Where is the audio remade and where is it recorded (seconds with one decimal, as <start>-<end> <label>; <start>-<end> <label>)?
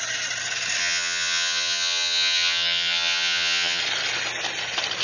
0.0-0.8 recorded; 0.8-3.8 remade; 3.8-5.0 recorded